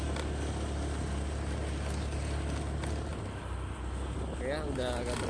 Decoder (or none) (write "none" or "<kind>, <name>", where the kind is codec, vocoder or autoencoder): none